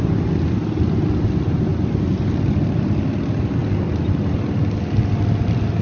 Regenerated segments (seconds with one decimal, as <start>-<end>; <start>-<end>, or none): none